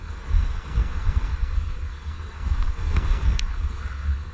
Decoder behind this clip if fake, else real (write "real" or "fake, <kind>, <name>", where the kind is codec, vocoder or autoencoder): fake, codec, SNAC